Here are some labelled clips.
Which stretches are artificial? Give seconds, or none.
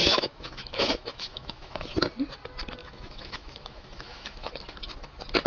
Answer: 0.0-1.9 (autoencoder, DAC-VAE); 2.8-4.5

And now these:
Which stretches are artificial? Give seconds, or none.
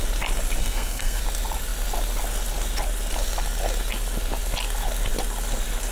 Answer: 0.6-1.2 (codec, SNAC)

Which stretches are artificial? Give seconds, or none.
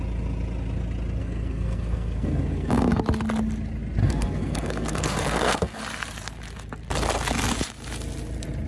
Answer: 1.2-3.0 (codec, SNAC); 4.0-5.8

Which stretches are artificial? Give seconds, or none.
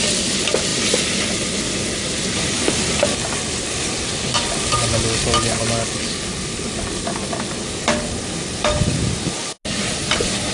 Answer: none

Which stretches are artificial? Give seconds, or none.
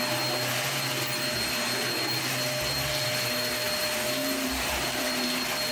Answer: 4.2-5.0 (vocoder, BigVGAN v2)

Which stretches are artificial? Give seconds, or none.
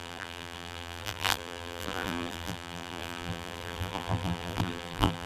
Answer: 0.0-5.3 (vocoder, BigVGAN v2)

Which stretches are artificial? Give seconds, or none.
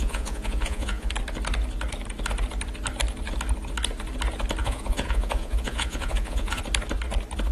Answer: 0.0-1.1 (vocoder, Vocos); 4.6-6.6